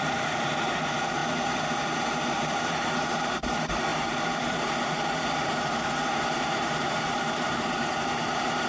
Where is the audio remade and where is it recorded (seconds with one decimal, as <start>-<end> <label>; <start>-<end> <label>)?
0.0-1.2 remade; 1.2-1.7 recorded; 1.7-8.7 remade